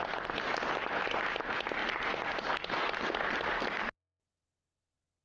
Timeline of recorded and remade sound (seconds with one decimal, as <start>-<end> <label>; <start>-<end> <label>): 0.0-5.2 recorded